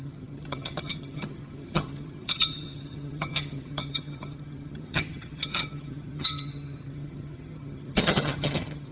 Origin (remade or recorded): remade